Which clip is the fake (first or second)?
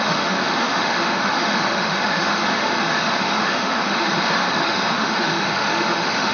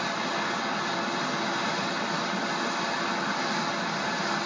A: first